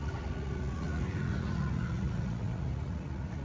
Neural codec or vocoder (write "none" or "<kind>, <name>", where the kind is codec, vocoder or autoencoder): vocoder, Vocos